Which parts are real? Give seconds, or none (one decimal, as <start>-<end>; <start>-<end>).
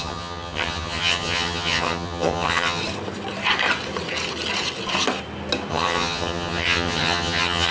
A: 2.8-5.7